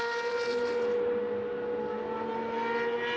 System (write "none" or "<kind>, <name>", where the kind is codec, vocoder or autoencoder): none